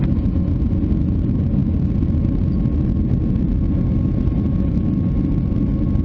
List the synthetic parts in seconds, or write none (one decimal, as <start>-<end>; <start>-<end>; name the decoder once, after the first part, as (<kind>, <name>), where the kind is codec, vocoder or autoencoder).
none